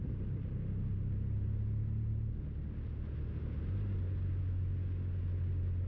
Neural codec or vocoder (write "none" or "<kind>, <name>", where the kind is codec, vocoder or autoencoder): none